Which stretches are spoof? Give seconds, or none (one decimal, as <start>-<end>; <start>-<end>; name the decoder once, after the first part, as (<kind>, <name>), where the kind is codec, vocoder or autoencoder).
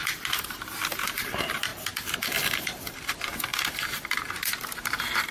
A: 0.0-5.3 (vocoder, BigVGAN v2)